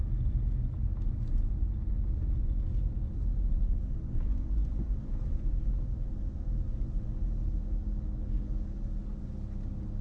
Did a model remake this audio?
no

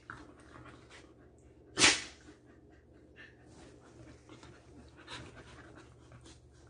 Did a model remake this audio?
no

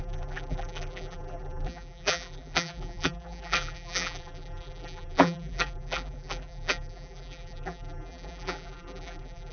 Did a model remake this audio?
yes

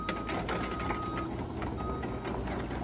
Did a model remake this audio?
no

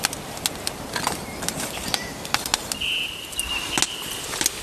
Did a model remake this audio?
no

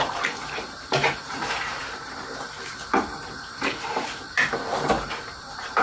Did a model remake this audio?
yes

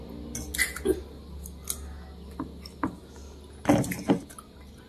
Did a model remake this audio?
no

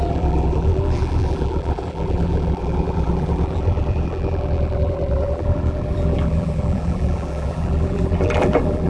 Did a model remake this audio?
yes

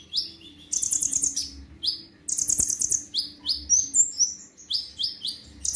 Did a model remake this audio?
no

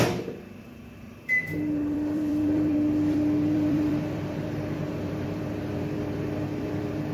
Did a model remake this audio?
yes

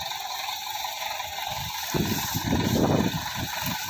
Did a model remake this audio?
yes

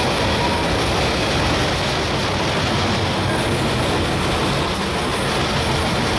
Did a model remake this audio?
no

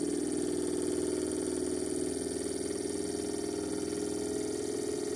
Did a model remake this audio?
no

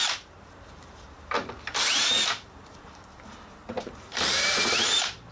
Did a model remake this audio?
yes